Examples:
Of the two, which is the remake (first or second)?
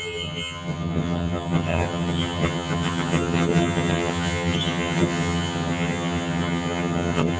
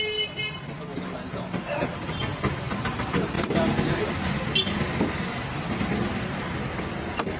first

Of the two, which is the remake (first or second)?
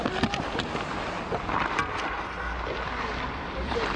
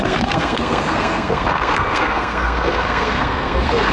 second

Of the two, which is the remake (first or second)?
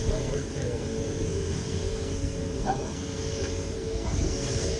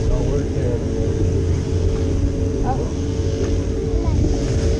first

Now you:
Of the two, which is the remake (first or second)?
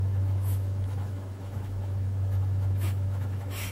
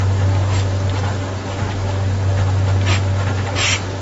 first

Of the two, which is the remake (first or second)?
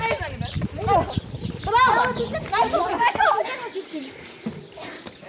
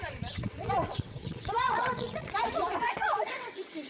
second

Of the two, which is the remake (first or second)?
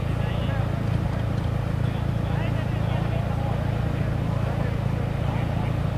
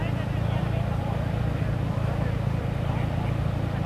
second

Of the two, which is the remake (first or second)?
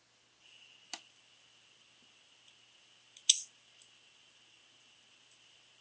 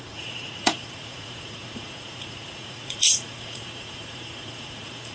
second